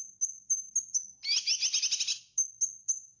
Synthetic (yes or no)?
no